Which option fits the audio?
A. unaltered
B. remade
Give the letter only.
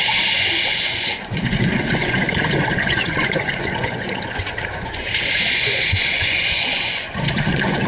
B